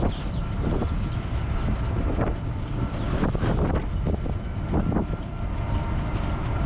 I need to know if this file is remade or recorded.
recorded